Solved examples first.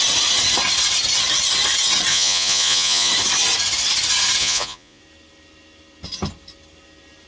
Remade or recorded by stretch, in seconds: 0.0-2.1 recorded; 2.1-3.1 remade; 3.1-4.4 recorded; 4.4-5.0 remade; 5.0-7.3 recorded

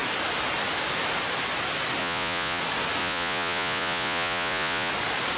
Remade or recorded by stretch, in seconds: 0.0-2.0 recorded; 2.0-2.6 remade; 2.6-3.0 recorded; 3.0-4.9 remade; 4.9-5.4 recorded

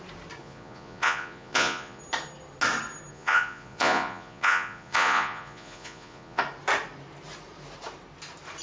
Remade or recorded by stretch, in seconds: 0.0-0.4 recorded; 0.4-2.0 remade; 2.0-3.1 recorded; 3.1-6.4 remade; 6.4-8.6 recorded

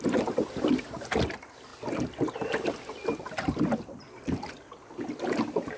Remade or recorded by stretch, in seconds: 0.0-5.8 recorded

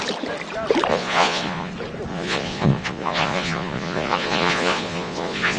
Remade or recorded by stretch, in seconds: 0.0-0.9 recorded; 0.9-1.7 remade; 1.7-2.1 recorded; 2.1-5.6 remade

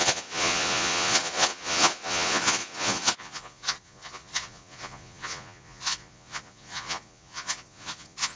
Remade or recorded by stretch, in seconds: 0.0-8.4 remade

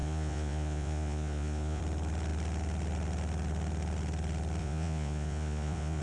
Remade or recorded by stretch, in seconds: 0.0-1.8 remade; 1.8-4.6 recorded; 4.6-6.0 remade